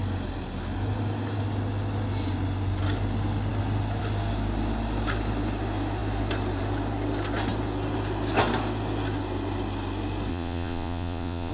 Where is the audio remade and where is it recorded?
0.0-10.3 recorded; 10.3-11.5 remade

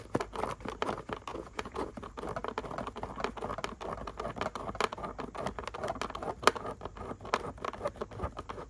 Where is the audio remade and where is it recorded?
0.0-1.3 recorded; 1.3-1.9 remade; 1.9-8.7 recorded